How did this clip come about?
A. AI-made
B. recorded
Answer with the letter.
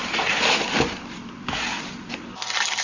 B